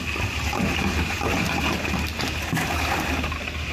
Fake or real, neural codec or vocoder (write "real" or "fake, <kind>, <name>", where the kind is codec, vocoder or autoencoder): real